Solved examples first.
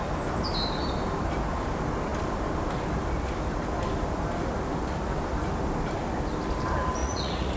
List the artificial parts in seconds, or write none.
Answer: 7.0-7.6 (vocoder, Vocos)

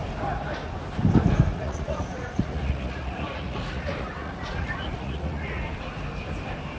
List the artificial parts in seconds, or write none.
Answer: 1.5-5.6 (vocoder, Vocos)